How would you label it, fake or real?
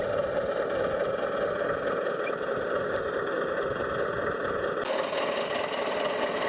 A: real